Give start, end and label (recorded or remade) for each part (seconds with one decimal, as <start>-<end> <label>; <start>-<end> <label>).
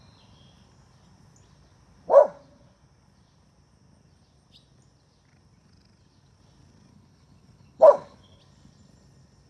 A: 0.0-6.9 recorded; 6.9-8.4 remade; 8.4-9.5 recorded